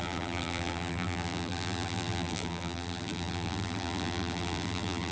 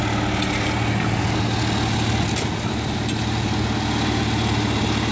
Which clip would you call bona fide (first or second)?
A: second